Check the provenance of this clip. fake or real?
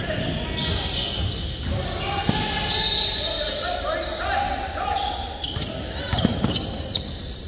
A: real